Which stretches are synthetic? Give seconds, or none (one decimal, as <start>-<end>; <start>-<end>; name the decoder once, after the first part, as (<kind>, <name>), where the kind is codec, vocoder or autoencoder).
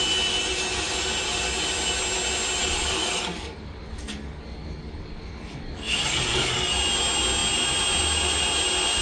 2.6-6.7 (codec, DAC)